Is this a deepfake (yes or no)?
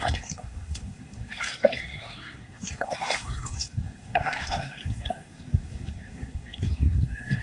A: yes